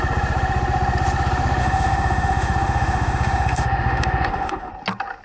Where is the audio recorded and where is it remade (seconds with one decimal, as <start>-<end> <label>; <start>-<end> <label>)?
0.0-1.6 recorded; 1.6-4.7 remade; 4.7-5.2 recorded